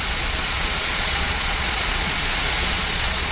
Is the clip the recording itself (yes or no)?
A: no